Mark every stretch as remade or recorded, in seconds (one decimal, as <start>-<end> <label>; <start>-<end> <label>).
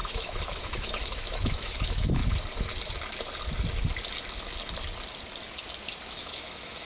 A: 0.0-2.2 remade; 2.2-6.1 recorded; 6.1-6.9 remade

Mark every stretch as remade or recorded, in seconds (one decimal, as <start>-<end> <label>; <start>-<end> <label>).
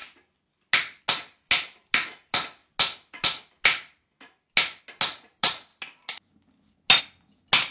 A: 0.0-7.7 recorded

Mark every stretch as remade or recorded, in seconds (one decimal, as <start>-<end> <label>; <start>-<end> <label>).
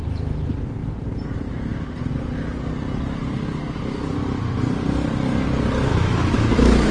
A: 0.0-5.9 recorded; 5.9-6.9 remade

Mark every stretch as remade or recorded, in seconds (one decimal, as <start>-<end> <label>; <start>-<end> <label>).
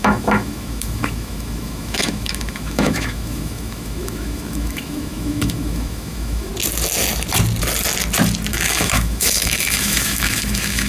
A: 0.0-6.5 remade; 6.5-8.5 recorded; 8.5-10.9 remade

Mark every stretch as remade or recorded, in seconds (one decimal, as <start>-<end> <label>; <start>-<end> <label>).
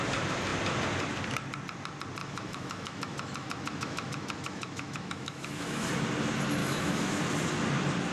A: 0.0-2.2 recorded; 2.2-5.9 remade; 5.9-6.6 recorded; 6.6-7.2 remade; 7.2-8.1 recorded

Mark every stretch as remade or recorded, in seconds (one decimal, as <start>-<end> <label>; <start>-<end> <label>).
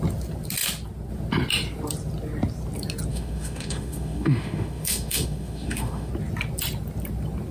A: 0.0-3.1 recorded; 3.1-6.1 remade; 6.1-7.5 recorded